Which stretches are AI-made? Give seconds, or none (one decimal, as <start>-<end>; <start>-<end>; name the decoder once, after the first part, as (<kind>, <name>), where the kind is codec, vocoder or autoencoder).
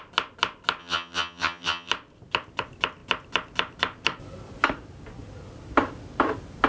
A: 0.8-1.9 (vocoder, HiFi-GAN)